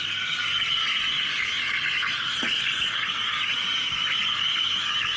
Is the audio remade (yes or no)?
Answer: no